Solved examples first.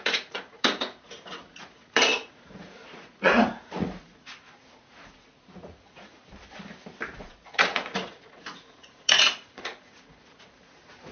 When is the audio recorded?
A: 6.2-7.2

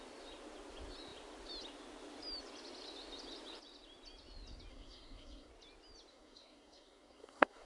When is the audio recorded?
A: 0.0-4.7; 5.5-6.1

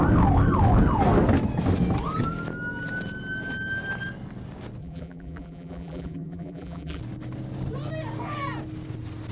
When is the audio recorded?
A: 0.0-4.8; 7.0-9.3

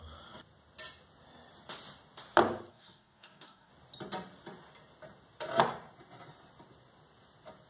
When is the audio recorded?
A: 0.0-2.7; 3.7-7.7

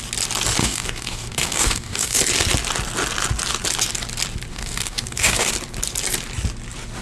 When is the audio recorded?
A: 0.0-0.6; 2.2-4.5; 5.5-7.0

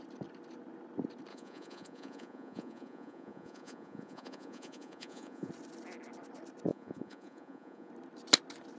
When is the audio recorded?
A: 0.0-1.3; 5.5-6.7; 7.9-8.8

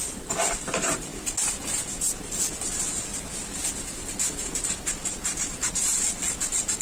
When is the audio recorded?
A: 1.1-2.7; 3.1-5.0